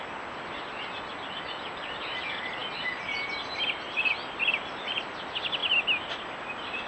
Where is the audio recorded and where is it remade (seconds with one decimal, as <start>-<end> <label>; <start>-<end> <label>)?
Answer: 0.0-6.9 recorded